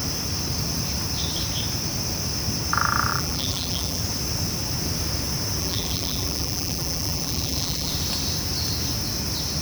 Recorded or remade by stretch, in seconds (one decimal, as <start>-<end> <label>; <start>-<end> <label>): 0.0-3.1 recorded; 3.1-4.0 remade; 4.0-5.6 recorded; 5.6-7.9 remade; 7.9-9.6 recorded